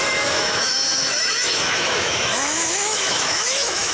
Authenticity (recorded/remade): remade